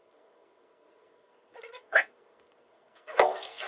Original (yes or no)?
no